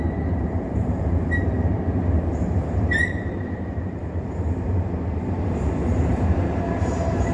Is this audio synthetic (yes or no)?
yes